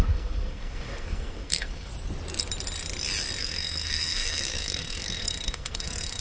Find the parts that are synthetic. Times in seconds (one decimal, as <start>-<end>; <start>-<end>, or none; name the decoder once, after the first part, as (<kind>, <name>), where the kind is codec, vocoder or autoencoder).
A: 0.0-1.9 (codec, SNAC); 3.4-6.2